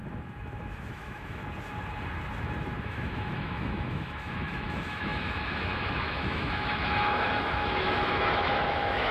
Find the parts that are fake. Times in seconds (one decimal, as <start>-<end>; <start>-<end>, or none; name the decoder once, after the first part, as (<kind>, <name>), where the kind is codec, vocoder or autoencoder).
0.7-1.4 (autoencoder, DAC-VAE); 2.8-9.1